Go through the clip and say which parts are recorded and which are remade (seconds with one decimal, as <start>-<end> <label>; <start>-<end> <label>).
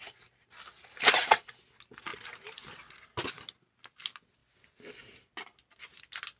0.0-6.4 recorded